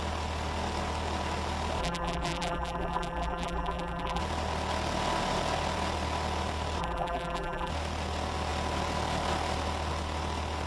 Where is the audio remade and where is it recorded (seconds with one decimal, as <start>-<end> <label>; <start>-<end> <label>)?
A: 0.0-1.8 recorded; 1.8-4.2 remade; 4.2-6.8 recorded; 6.8-7.7 remade; 7.7-10.7 recorded